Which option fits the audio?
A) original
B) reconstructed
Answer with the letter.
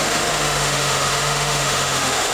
B